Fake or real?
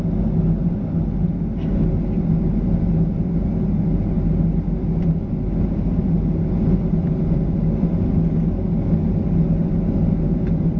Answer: real